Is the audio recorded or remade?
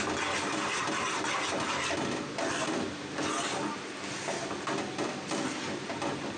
recorded